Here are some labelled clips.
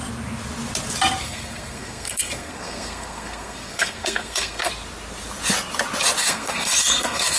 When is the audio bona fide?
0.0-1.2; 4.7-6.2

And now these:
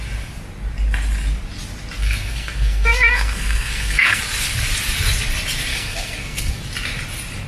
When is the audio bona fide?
0.0-2.0; 4.2-5.7; 6.6-7.5

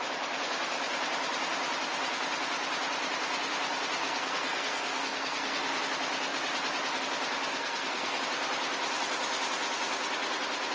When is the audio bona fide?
0.0-4.0; 5.8-7.5; 8.2-10.7

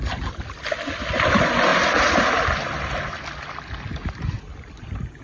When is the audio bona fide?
0.0-5.2

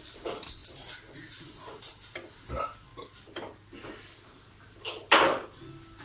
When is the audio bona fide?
0.0-6.0